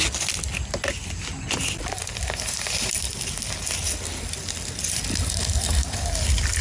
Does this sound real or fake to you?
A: real